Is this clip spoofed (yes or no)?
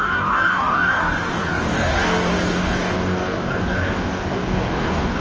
yes